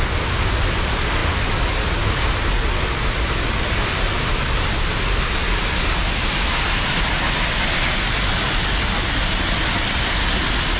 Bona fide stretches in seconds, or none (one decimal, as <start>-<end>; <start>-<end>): 0.0-10.8